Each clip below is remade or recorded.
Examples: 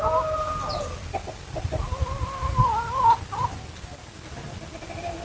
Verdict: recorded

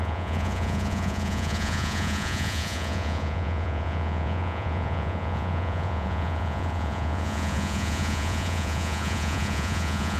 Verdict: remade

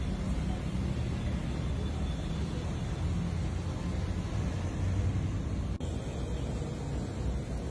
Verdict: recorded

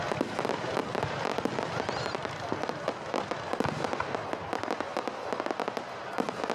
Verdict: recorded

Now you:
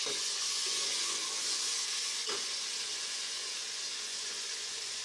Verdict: remade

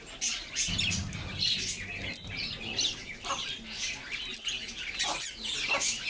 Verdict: recorded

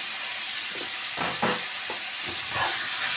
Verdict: recorded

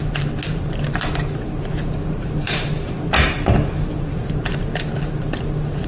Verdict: remade